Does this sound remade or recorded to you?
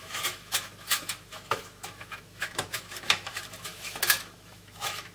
remade